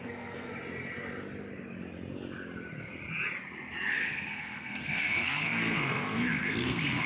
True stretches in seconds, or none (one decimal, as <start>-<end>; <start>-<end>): 0.5-3.9